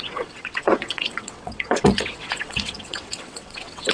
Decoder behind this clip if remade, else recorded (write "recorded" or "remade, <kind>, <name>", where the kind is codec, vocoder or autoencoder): remade, vocoder, WaveNeXt